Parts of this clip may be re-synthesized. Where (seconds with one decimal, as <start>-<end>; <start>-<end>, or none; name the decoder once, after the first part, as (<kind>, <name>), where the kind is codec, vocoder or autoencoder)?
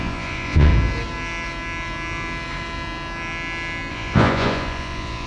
0.0-0.7 (vocoder, Vocos); 3.9-5.3